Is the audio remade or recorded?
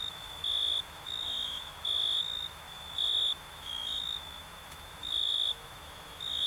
remade